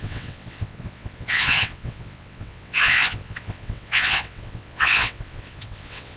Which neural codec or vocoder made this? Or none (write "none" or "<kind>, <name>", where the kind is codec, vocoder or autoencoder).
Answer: vocoder, WaveNeXt